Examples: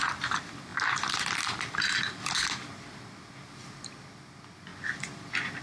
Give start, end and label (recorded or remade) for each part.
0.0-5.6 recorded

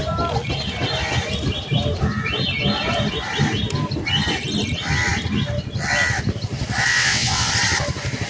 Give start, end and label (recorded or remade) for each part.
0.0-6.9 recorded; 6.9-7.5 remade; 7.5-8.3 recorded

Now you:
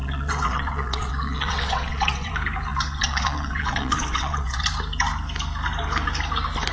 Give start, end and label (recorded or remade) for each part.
0.0-2.3 remade; 2.3-2.7 recorded; 2.7-4.6 remade; 4.6-6.7 recorded